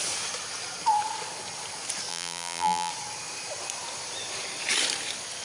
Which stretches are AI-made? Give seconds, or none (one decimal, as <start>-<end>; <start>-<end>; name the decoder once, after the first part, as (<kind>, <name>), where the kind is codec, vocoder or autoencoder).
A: 2.1-2.9 (vocoder, BigVGAN v2)